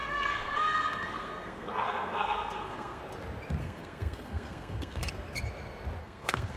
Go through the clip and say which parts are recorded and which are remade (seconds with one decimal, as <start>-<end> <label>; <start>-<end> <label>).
0.0-3.0 remade; 3.0-3.6 recorded; 3.6-5.1 remade; 5.1-6.0 recorded; 6.0-6.6 remade